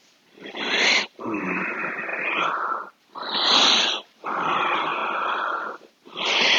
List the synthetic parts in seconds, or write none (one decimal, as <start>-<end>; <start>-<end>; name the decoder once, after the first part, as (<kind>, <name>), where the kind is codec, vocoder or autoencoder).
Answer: 0.0-6.6 (vocoder, BigVGAN v2)